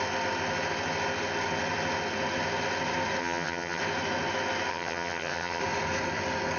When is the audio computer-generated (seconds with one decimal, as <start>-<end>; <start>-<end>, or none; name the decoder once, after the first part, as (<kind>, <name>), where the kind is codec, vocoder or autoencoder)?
3.2-3.8 (vocoder, HiFi-GAN); 4.7-5.6